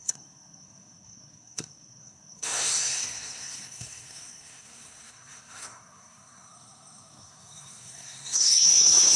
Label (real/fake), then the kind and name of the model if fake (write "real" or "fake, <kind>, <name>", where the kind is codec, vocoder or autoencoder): fake, codec, SNAC